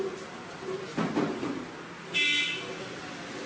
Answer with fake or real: real